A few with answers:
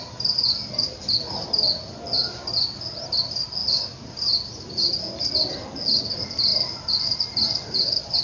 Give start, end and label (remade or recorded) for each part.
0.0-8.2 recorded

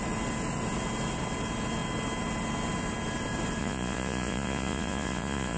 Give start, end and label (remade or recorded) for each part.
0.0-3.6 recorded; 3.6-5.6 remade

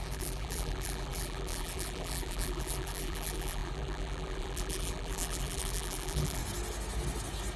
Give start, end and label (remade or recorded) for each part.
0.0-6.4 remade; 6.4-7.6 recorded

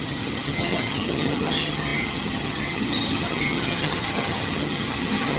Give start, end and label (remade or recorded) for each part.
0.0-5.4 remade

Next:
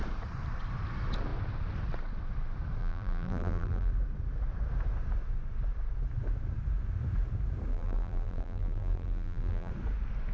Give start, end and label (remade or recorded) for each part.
0.0-2.8 recorded; 2.8-3.9 remade; 3.9-7.7 recorded; 7.7-9.7 remade; 9.7-10.3 recorded

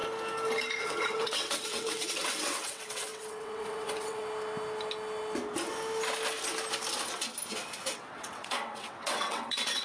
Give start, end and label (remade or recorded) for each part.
0.0-0.8 recorded; 0.8-4.2 remade; 4.2-7.9 recorded; 7.9-9.8 remade